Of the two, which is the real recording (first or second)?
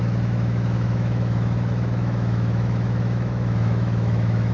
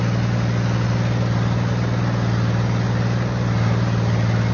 second